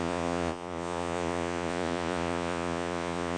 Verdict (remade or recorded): remade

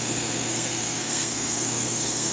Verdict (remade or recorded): remade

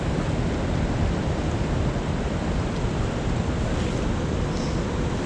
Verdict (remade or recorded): recorded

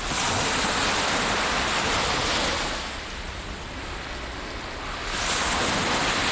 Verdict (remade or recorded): recorded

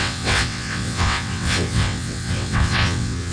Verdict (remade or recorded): remade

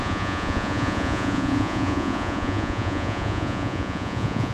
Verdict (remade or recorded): remade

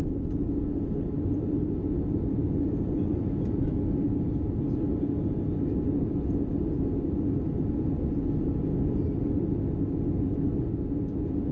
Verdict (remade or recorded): recorded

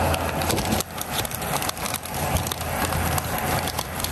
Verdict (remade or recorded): recorded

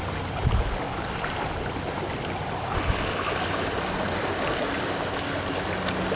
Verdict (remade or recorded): recorded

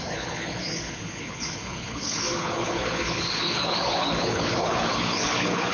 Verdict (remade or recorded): remade